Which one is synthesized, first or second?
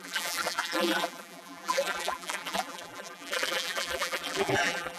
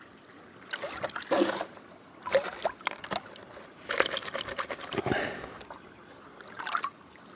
first